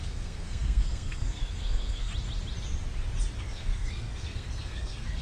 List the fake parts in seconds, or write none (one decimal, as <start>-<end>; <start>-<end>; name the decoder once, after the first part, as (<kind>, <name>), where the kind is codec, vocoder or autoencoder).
0.0-2.1 (codec, SNAC); 3.4-5.2